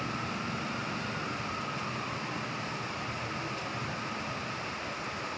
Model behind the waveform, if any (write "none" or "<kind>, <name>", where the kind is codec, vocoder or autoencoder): none